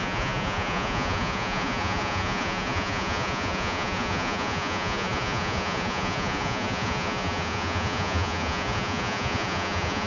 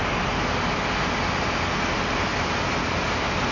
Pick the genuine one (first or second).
second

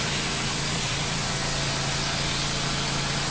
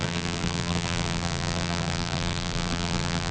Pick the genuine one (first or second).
first